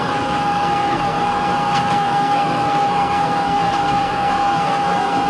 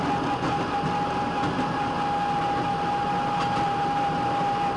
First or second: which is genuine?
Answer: second